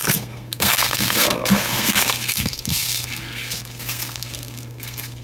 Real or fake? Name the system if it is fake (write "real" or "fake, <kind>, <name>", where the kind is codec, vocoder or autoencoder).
fake, codec, SNAC